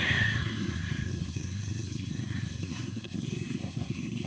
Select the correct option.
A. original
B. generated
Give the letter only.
B